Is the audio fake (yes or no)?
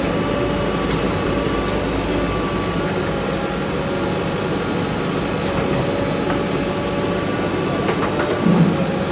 no